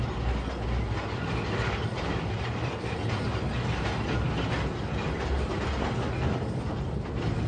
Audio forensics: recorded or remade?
recorded